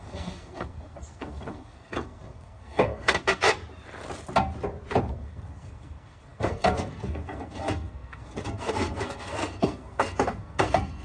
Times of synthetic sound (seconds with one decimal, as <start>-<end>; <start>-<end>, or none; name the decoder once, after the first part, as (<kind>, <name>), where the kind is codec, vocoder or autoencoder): 0.0-3.6 (codec, SNAC); 5.1-11.0